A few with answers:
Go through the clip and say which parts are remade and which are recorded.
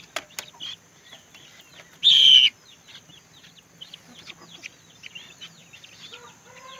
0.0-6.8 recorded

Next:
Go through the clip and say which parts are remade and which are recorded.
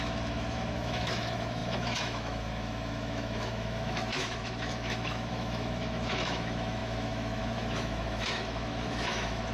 0.0-9.5 remade